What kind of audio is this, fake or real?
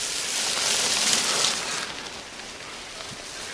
real